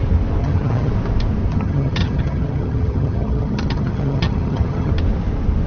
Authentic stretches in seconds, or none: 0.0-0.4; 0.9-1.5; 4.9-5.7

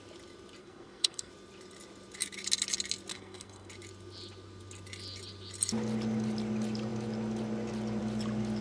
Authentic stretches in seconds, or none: 0.0-0.6; 1.3-3.1; 3.7-8.6

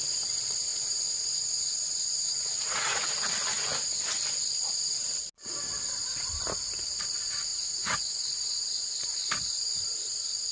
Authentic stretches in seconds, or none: 0.0-0.7; 3.3-7.5; 8.0-10.5

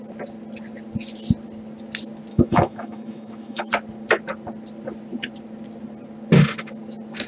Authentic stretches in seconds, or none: 0.0-2.3; 3.7-7.3

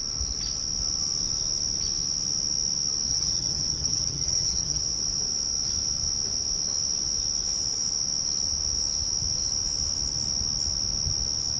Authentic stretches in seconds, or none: 0.0-3.1; 4.8-11.6